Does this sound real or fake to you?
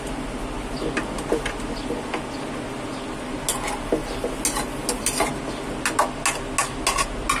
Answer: real